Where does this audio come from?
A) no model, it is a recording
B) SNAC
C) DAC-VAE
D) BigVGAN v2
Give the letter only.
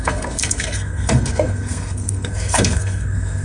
B